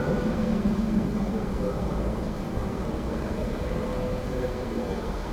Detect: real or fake fake